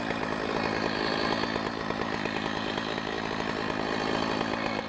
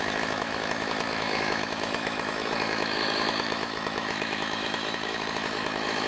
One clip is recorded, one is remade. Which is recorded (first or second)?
first